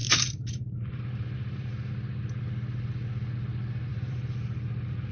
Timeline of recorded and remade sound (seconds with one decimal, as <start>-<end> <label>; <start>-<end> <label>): 0.0-1.9 remade; 1.9-3.9 recorded; 3.9-5.1 remade